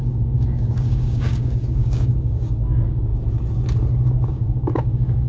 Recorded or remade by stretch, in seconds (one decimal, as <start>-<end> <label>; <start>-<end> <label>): 0.0-3.1 remade; 3.1-4.3 recorded; 4.3-5.3 remade